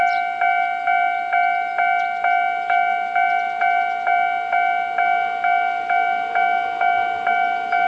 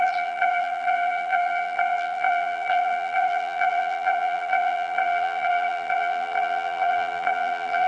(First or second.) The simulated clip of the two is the second